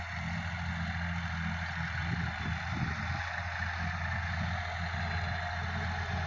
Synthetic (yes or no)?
no